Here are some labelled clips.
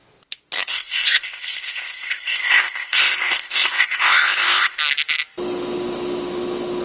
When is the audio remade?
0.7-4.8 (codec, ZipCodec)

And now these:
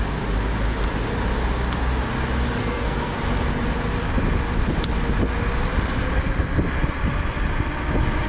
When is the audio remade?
2.6-3.2 (codec, SNAC)

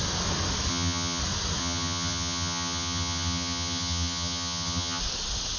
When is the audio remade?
0.7-1.2 (vocoder, HiFi-GAN); 1.6-5.0